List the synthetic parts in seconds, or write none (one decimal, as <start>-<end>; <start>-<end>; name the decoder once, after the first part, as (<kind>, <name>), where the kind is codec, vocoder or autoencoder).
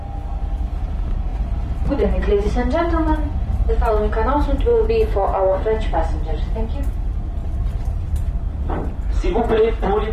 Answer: 1.3-3.9 (vocoder, BigVGAN v2); 7.4-9.7